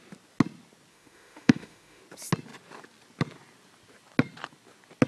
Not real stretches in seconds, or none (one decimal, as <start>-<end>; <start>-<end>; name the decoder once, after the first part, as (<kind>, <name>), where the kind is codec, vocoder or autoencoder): 0.9-2.0 (autoencoder, DAC-VAE)